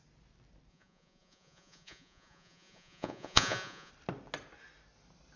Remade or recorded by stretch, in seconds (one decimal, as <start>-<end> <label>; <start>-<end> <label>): 0.0-0.7 recorded; 0.7-3.9 remade; 3.9-5.4 recorded